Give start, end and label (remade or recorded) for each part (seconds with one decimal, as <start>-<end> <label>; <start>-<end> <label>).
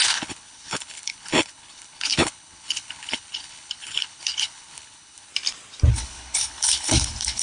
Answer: 0.0-5.3 remade; 5.3-5.9 recorded; 5.9-7.4 remade